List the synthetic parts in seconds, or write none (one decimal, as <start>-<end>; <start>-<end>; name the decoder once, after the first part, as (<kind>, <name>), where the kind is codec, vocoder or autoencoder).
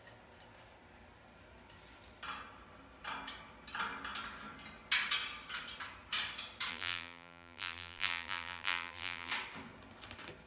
6.7-9.3 (vocoder, BigVGAN v2)